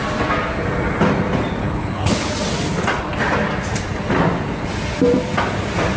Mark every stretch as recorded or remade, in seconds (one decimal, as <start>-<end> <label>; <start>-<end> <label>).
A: 0.0-1.6 recorded; 1.6-2.3 remade; 2.3-6.0 recorded